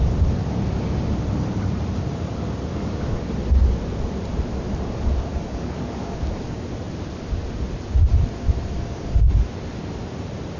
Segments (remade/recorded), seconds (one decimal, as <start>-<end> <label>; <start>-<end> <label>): 0.0-2.7 recorded; 2.7-3.2 remade; 3.2-5.3 recorded; 5.3-6.6 remade; 6.6-10.6 recorded